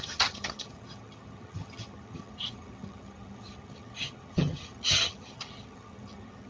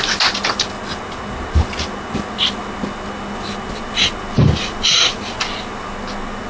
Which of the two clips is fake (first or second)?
first